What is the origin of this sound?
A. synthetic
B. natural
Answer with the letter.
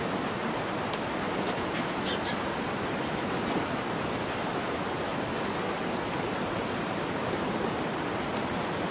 B